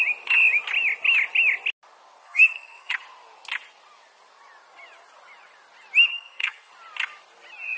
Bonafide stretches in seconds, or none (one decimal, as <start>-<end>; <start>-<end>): 0.0-2.2; 2.9-6.1; 6.7-7.8